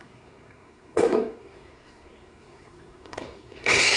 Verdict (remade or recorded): remade